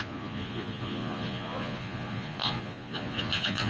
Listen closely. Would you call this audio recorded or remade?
remade